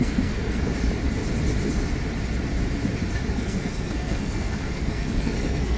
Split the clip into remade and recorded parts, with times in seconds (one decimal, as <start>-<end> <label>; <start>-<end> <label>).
0.0-0.7 remade; 0.7-3.3 recorded; 3.3-5.8 remade